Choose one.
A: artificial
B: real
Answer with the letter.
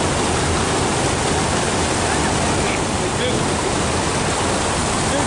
B